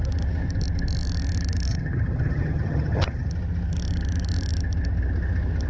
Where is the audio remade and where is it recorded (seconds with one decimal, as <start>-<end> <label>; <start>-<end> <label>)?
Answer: 0.0-1.7 recorded; 1.7-3.3 remade; 3.3-5.7 recorded